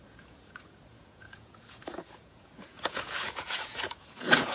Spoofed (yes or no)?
yes